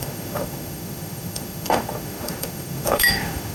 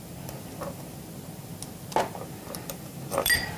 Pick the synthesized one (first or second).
first